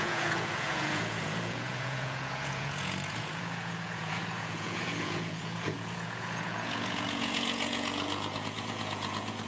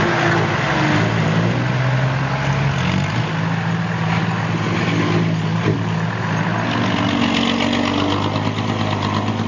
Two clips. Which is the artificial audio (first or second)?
first